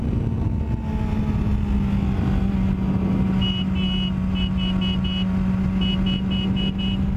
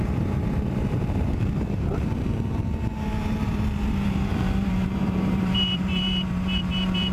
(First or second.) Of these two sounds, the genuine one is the first